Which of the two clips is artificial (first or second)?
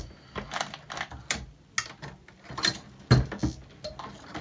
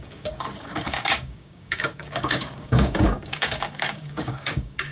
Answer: second